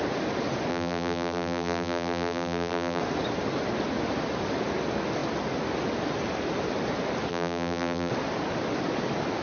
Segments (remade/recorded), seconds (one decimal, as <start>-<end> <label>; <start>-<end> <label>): 0.0-0.7 recorded; 0.7-3.0 remade; 3.0-7.3 recorded; 7.3-8.1 remade; 8.1-9.4 recorded